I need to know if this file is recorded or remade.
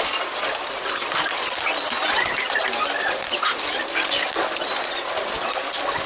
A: recorded